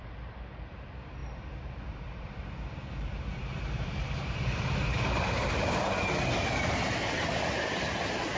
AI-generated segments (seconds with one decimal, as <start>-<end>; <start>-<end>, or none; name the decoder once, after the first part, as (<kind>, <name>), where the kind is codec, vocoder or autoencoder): 1.2-5.8 (vocoder, BigVGAN v2)